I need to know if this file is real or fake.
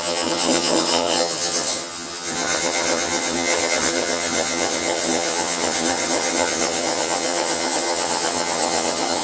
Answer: fake